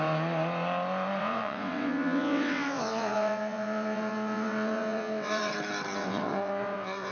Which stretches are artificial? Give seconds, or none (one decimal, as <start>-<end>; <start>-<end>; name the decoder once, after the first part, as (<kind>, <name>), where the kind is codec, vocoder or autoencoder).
1.2-5.5 (vocoder, WaveNeXt); 6.0-7.1